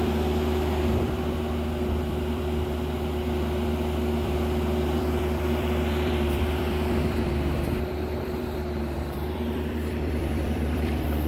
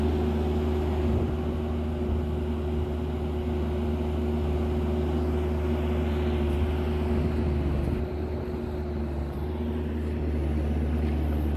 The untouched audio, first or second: second